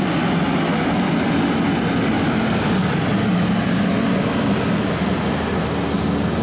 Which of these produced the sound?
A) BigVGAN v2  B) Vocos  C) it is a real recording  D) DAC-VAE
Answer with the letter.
C